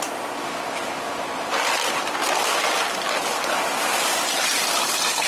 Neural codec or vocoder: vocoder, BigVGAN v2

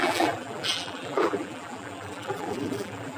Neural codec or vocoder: vocoder, BigVGAN v2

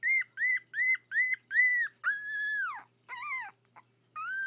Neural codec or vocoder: none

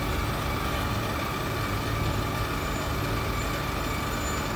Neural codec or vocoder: none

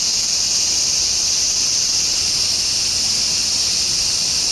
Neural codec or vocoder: none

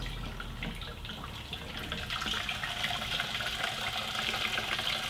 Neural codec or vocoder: none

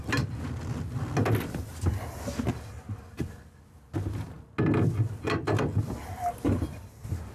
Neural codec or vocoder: none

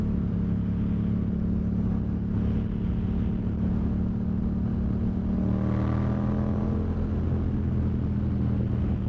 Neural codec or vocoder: none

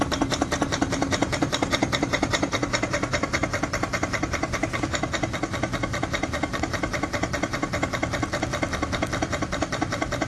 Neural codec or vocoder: none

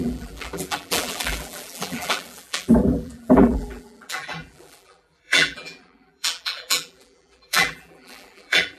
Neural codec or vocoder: vocoder, BigVGAN v2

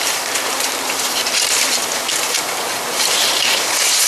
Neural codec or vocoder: vocoder, BigVGAN v2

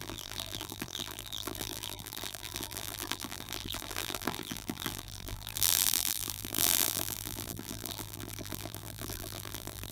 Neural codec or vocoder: vocoder, BigVGAN v2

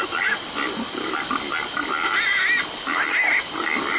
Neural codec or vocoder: none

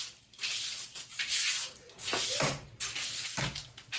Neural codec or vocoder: none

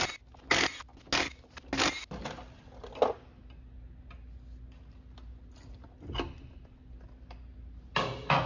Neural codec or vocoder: none